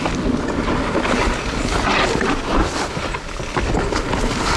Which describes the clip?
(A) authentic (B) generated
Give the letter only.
A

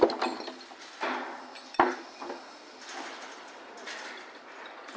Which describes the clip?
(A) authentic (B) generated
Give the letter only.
A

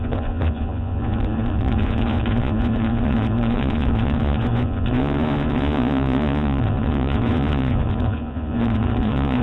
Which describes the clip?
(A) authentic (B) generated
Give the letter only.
B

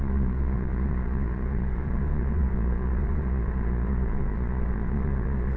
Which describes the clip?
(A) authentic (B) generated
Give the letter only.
B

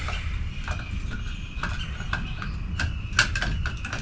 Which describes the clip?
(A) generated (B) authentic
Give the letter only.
B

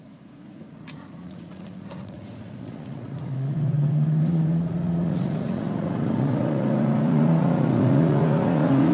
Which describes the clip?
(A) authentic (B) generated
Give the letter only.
B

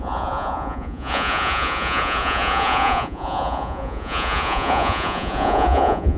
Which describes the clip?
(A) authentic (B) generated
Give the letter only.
B